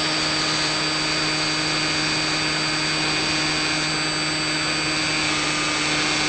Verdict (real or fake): real